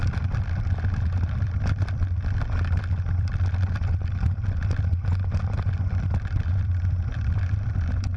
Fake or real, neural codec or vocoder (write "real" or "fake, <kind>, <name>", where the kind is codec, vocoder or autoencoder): fake, vocoder, BigVGAN v2